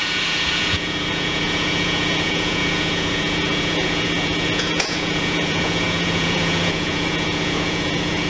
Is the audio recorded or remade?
remade